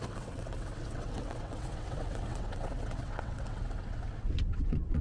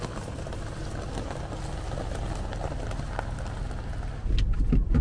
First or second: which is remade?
first